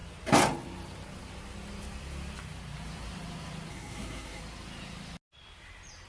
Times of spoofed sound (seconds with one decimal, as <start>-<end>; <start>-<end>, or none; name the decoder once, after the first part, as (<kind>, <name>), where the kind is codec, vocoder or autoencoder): 3.7-4.4 (codec, SNAC)